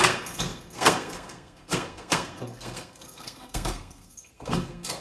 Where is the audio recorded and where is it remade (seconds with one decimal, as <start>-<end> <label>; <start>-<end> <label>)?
0.0-5.0 remade